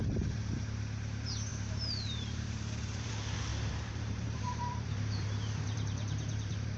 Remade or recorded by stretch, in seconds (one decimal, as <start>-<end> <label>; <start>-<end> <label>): 0.0-1.5 recorded; 1.5-3.1 remade; 3.1-3.5 recorded; 3.5-6.8 remade